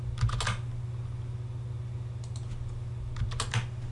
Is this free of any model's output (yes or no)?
yes